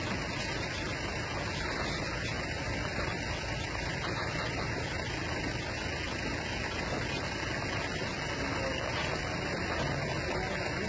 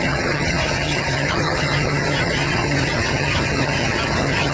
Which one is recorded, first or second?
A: first